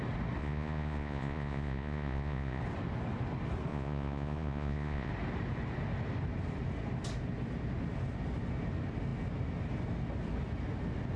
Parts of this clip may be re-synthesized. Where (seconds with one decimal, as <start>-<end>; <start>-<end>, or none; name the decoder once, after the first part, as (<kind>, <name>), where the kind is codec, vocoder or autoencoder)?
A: 0.4-2.6 (vocoder, Vocos); 3.7-5.1